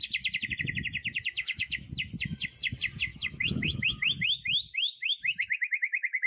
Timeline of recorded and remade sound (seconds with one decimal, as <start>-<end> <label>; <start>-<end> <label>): 0.0-1.0 recorded; 1.0-1.7 remade; 1.7-3.1 recorded; 3.1-6.3 remade